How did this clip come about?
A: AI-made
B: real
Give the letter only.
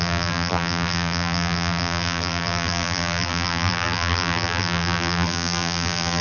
A